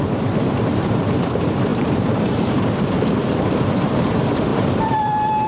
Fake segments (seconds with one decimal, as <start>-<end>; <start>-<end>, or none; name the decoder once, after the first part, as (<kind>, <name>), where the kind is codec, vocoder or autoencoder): 0.0-5.5 (vocoder, BigVGAN v2)